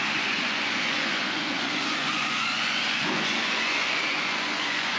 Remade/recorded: remade